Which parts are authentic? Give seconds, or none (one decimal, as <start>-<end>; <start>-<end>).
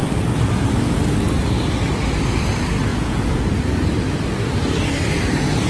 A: 0.0-2.9; 3.4-5.7